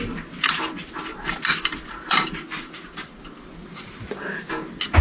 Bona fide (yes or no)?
yes